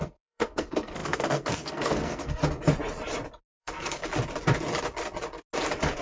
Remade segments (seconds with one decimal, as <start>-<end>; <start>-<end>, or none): 0.0-2.4; 3.6-4.0